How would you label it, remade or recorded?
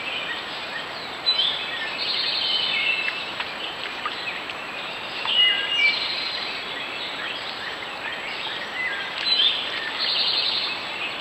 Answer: remade